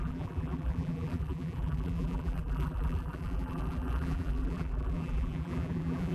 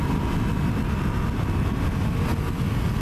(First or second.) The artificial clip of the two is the first